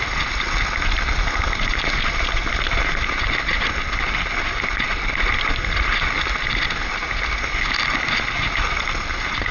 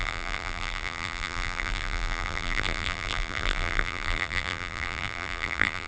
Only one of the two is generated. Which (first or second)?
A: second